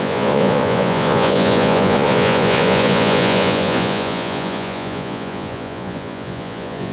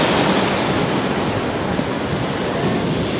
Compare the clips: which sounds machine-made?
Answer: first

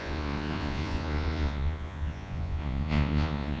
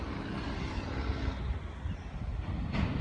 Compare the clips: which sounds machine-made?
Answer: first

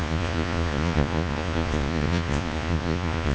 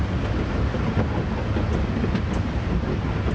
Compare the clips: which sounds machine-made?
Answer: first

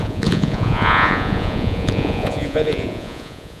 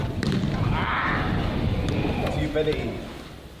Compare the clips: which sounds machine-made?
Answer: first